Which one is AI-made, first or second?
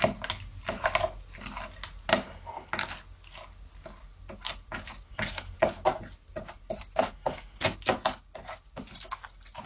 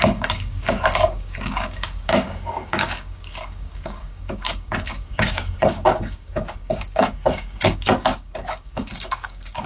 second